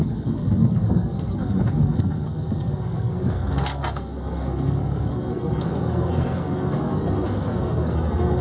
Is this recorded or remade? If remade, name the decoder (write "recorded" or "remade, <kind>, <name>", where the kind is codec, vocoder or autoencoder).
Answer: remade, codec, SNAC